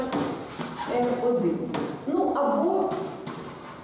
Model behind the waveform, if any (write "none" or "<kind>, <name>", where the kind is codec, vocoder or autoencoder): none